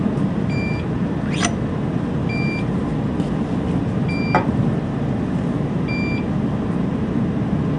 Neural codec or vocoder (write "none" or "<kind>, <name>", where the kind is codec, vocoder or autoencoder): none